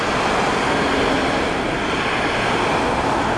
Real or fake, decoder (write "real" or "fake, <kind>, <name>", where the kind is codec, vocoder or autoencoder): real